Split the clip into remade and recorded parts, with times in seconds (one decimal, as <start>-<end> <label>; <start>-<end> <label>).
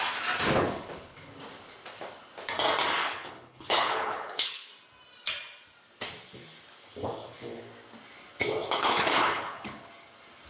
0.0-0.6 recorded; 0.6-1.4 remade; 1.4-3.0 recorded; 3.0-4.7 remade; 4.7-7.0 recorded; 7.0-7.6 remade; 7.6-8.6 recorded; 8.6-9.9 remade; 9.9-10.5 recorded